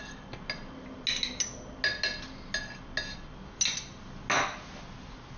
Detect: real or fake real